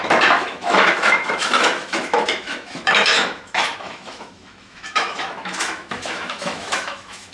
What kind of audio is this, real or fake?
fake